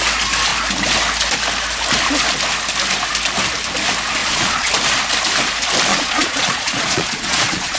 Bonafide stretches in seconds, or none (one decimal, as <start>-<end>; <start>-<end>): 0.0-4.2; 4.7-5.9